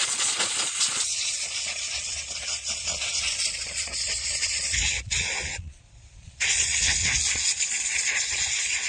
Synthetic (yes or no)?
yes